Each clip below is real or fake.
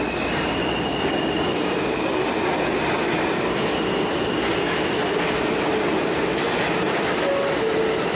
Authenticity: real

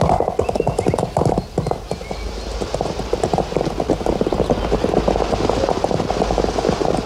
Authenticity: real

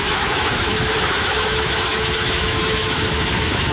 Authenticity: fake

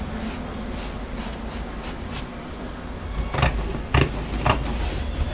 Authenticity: real